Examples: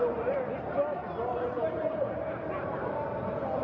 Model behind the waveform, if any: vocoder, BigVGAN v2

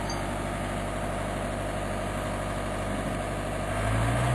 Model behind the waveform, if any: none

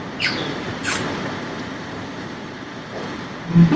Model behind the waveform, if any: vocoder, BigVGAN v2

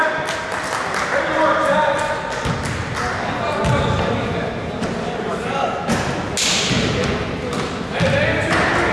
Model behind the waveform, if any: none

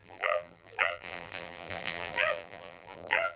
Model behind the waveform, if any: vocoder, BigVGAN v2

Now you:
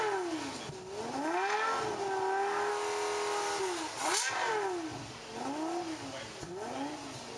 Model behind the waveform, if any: none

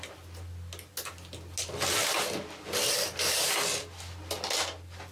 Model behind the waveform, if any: none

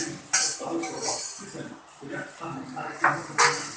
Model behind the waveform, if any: none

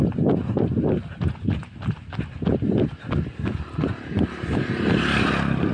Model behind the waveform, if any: none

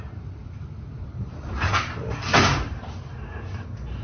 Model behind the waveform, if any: vocoder, BigVGAN v2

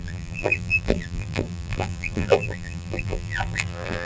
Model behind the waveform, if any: vocoder, BigVGAN v2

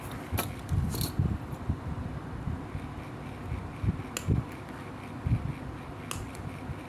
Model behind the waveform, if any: none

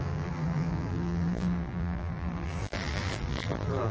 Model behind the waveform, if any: vocoder, BigVGAN v2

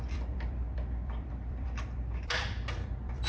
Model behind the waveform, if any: vocoder, BigVGAN v2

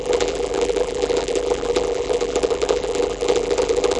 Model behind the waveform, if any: vocoder, BigVGAN v2